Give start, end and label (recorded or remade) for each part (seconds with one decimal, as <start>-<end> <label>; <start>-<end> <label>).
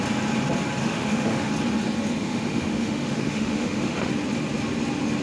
0.0-0.8 recorded; 0.8-1.5 remade; 1.5-2.2 recorded; 2.2-4.1 remade; 4.1-5.2 recorded